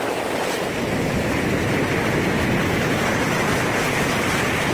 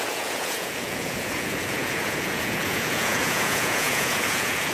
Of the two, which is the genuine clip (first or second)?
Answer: first